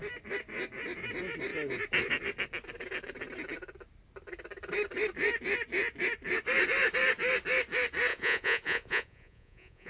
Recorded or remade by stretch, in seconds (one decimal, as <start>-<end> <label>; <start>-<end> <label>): 0.0-8.1 recorded; 8.1-9.9 remade